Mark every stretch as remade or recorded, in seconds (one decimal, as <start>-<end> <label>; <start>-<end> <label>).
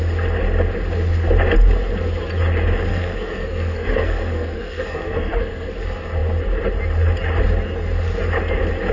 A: 0.0-2.9 recorded; 2.9-5.7 remade; 5.7-8.9 recorded